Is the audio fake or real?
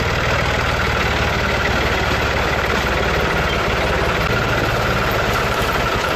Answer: real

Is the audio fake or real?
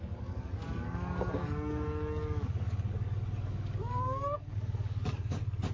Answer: fake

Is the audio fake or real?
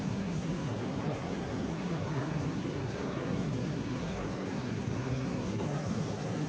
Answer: fake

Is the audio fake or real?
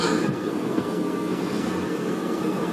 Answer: fake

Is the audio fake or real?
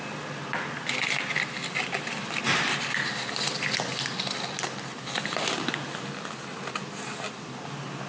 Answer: real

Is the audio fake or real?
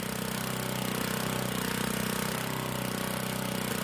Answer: real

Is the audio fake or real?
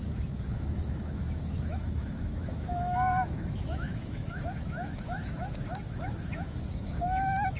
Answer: fake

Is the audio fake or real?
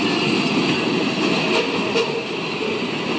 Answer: real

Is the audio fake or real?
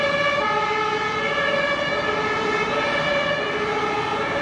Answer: real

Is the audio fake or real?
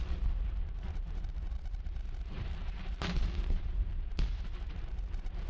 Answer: fake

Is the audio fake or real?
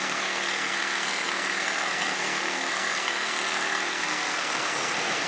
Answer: fake